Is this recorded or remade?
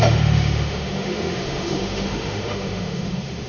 remade